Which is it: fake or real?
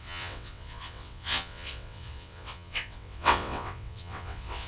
fake